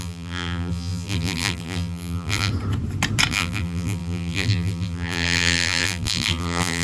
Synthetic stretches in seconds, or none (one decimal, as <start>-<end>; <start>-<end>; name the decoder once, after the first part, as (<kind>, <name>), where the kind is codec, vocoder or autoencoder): 0.0-2.5 (vocoder, BigVGAN v2); 3.3-6.8